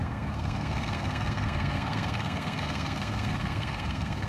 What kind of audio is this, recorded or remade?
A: remade